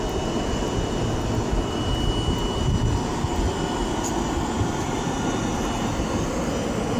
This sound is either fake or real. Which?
real